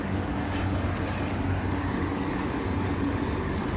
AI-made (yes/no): yes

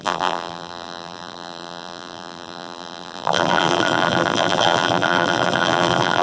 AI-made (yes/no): yes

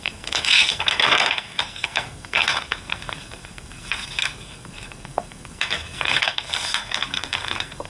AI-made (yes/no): yes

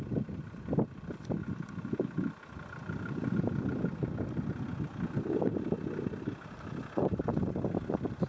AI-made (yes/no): no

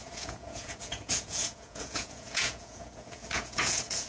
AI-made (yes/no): yes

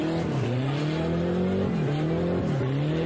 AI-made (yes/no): no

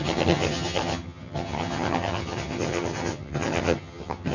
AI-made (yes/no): yes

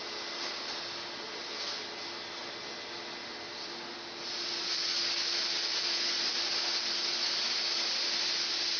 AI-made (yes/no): no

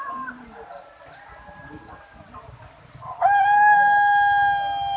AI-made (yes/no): no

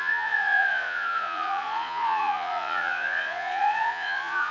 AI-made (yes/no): yes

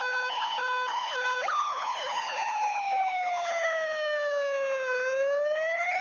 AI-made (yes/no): yes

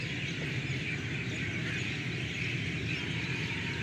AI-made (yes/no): no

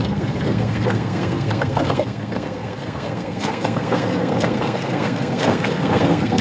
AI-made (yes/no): yes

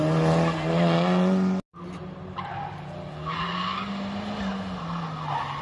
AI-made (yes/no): no